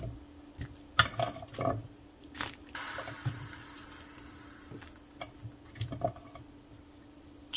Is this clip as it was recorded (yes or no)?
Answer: yes